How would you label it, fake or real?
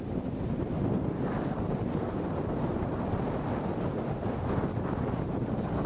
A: real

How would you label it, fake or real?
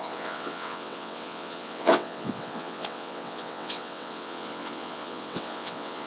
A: fake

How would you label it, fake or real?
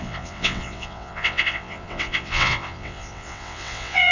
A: fake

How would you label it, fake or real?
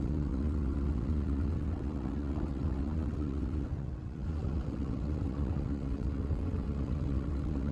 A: fake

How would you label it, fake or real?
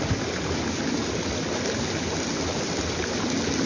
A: real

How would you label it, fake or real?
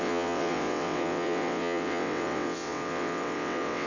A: fake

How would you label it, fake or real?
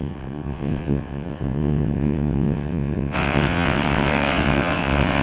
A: fake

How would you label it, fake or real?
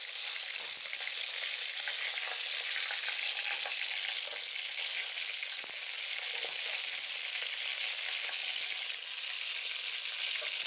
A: real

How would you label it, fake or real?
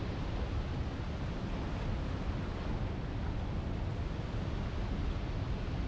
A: real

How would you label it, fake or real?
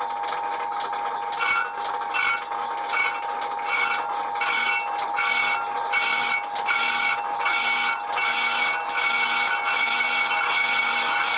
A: real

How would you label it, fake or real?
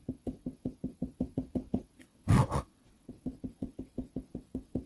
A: fake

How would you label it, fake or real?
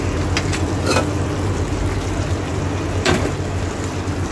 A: real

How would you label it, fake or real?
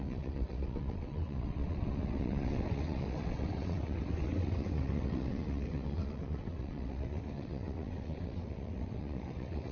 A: fake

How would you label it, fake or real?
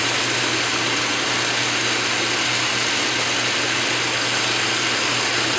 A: real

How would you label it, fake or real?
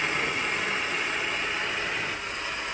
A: real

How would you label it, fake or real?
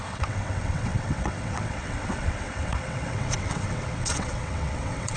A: fake